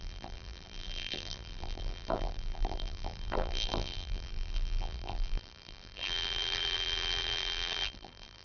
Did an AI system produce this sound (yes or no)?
yes